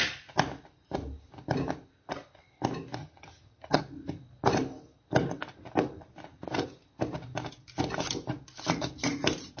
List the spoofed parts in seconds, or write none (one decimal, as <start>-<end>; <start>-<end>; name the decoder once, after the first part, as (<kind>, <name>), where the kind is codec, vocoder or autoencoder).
3.0-3.8 (vocoder, HiFi-GAN)